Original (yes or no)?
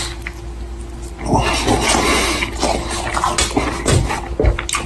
yes